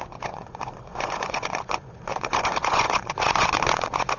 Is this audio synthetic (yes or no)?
yes